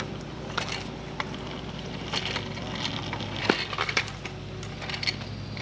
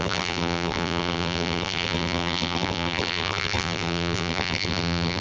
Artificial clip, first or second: second